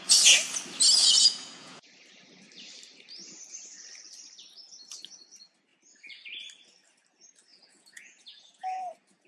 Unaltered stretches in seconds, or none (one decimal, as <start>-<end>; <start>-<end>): 0.0-1.0; 1.9-7.5; 8.9-9.3